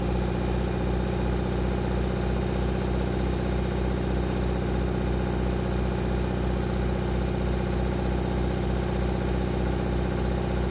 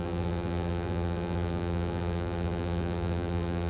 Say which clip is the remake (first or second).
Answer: second